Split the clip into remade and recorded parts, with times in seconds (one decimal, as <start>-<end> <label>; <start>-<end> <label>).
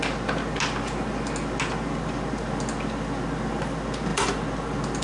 0.0-5.0 recorded